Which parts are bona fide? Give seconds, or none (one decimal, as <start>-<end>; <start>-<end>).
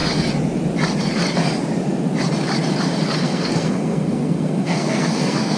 0.0-3.2